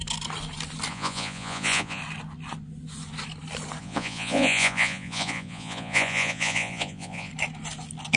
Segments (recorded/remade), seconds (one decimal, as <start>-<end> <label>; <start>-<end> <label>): 0.0-0.9 recorded; 0.9-2.0 remade; 2.0-3.8 recorded; 3.8-7.3 remade; 7.3-8.2 recorded